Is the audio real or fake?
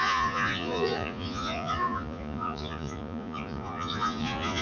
fake